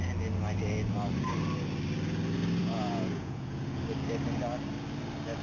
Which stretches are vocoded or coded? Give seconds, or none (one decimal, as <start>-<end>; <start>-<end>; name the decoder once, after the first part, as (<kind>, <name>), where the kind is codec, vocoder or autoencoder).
2.6-3.8 (vocoder, Vocos)